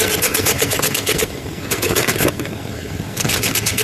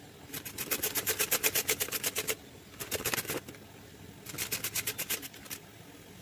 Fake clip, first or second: first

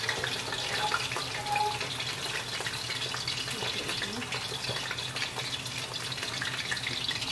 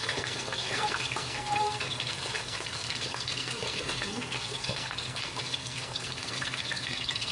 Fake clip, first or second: second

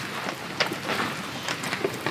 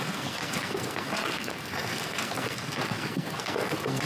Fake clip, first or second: second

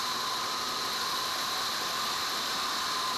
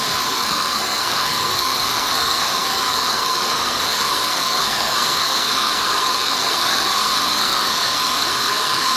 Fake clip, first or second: second